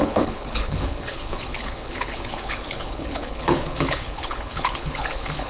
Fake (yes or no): yes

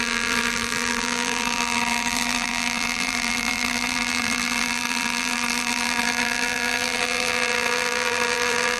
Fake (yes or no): yes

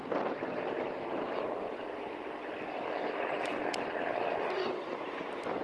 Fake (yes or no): no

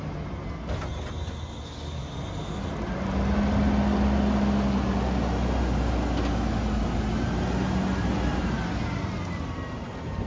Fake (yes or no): no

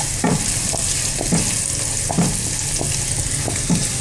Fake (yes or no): no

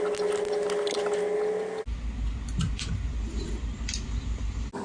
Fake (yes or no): no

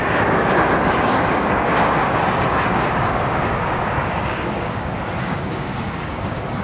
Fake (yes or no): yes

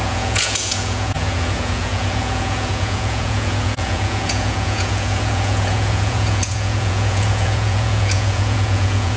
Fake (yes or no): yes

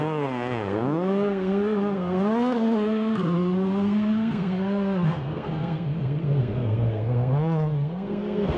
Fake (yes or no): yes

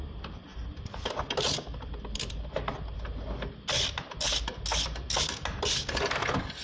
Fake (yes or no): no